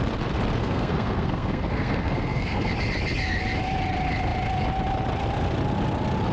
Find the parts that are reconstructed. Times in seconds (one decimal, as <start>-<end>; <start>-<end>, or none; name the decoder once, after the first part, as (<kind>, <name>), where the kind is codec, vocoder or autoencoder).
0.6-2.7 (codec, SNAC)